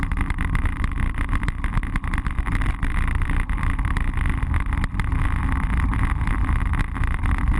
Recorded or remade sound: recorded